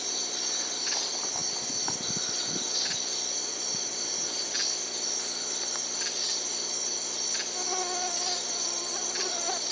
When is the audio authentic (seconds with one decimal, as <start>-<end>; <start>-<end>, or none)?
0.0-9.7